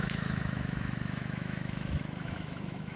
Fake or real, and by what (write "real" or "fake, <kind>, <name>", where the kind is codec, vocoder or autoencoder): fake, autoencoder, DAC-VAE